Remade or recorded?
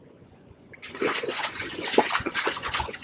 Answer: remade